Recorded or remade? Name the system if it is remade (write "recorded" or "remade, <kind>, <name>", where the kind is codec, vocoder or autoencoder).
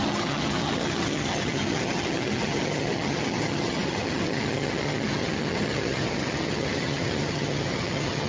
remade, vocoder, HiFi-GAN